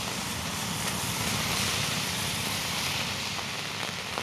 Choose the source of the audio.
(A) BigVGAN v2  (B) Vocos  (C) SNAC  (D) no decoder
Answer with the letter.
A